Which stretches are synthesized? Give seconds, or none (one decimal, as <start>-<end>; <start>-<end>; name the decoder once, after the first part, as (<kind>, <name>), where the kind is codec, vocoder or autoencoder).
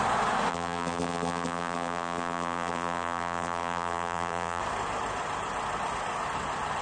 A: 0.5-4.6 (vocoder, BigVGAN v2)